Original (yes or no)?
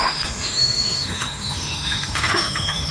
no